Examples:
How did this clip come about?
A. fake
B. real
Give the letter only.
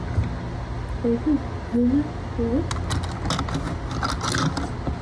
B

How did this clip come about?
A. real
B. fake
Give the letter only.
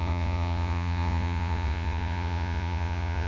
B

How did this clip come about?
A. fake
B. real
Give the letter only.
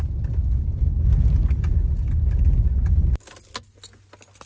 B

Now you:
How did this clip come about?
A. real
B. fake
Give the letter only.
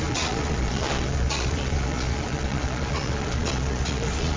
B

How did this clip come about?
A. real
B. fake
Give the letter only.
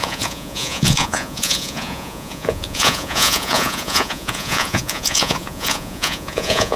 B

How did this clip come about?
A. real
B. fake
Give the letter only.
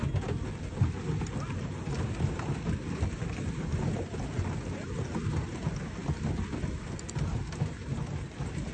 A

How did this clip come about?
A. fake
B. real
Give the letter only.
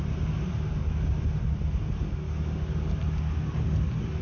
B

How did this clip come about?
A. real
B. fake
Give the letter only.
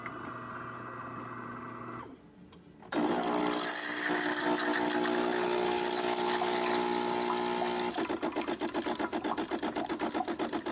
A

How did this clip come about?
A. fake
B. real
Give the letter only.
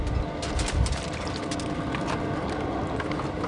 B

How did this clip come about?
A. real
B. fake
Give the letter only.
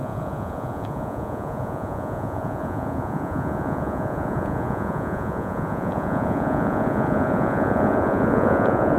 B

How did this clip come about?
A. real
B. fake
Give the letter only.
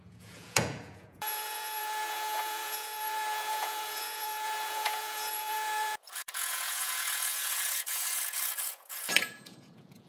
B